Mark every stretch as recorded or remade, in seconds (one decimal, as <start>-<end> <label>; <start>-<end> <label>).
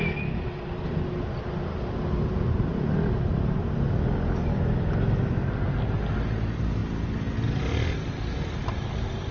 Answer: 0.0-9.3 recorded